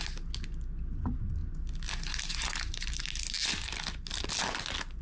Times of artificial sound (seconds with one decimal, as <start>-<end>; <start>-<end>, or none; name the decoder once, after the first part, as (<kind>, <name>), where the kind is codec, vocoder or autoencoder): none